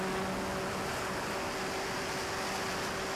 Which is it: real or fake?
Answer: real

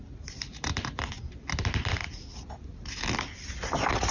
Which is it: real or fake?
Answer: real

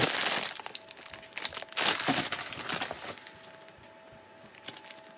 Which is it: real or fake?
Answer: real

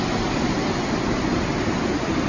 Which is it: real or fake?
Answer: real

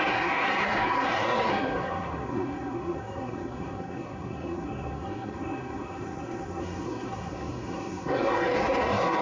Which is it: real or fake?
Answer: fake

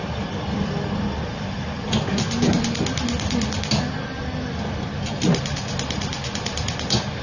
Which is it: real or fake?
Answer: real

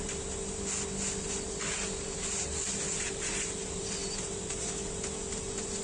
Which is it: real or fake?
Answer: real